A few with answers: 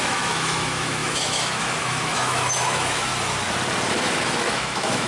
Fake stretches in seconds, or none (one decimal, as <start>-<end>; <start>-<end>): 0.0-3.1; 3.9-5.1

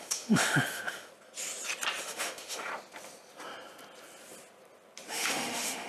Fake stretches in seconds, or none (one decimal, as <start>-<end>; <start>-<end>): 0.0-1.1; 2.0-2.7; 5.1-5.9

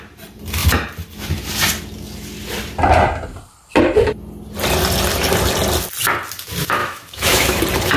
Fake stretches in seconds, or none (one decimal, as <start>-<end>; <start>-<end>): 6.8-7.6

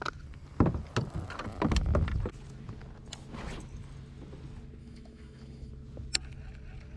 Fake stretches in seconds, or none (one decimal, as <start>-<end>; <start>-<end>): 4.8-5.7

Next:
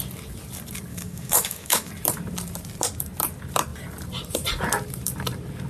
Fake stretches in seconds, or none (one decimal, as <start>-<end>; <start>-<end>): 0.9-1.9

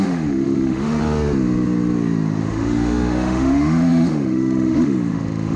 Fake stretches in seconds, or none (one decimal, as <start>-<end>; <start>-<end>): 0.0-1.0; 2.4-5.6

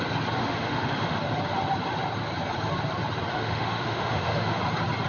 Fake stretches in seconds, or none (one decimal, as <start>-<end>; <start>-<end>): 0.4-1.2; 3.3-4.6

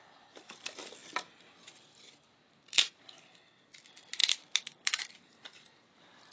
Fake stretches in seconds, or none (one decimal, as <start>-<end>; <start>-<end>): none